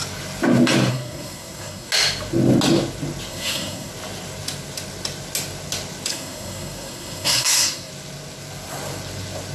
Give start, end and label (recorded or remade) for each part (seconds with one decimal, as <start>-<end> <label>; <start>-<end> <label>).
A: 0.0-0.9 recorded; 0.9-1.9 remade; 1.9-3.3 recorded; 3.3-3.9 remade; 3.9-6.1 recorded; 6.1-7.9 remade; 7.9-9.5 recorded

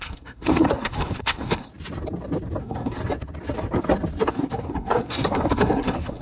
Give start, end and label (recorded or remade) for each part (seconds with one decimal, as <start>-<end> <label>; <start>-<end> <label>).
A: 0.0-1.7 remade; 1.7-2.6 recorded; 2.6-3.0 remade; 3.0-4.3 recorded; 4.3-6.2 remade

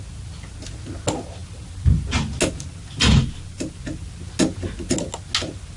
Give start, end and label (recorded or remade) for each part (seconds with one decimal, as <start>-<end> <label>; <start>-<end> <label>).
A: 0.0-5.8 recorded

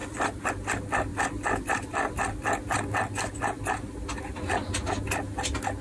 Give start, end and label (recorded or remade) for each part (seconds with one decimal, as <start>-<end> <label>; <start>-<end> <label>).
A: 0.0-0.5 remade; 0.5-1.1 recorded; 1.1-3.0 remade; 3.0-5.8 recorded

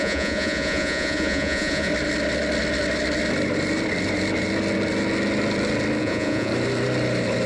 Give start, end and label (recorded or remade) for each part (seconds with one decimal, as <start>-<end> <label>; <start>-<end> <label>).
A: 0.0-1.9 remade; 1.9-6.0 recorded; 6.0-6.5 remade; 6.5-7.5 recorded

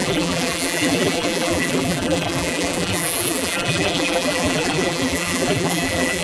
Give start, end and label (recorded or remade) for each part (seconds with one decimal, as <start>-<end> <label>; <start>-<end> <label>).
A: 0.0-6.2 remade

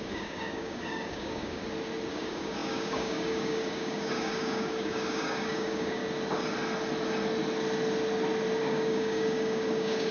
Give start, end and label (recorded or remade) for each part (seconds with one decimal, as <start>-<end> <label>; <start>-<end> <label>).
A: 0.0-1.6 remade; 1.6-2.1 recorded; 2.1-6.0 remade; 6.0-8.6 recorded; 8.6-10.1 remade

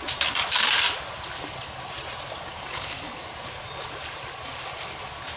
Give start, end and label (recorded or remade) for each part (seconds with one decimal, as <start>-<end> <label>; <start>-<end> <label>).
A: 0.0-2.5 recorded; 2.5-3.3 remade; 3.3-5.4 recorded